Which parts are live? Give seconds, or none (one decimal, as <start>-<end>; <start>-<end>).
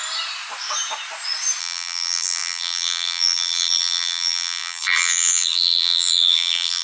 0.0-1.6